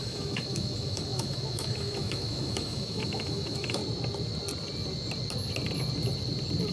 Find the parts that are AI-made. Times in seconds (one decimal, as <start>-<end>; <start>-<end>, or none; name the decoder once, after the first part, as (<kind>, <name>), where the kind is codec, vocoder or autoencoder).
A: 0.0-3.8 (autoencoder, DAC-VAE)